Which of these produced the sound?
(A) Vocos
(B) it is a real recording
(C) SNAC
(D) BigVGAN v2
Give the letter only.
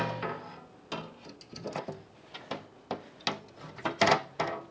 B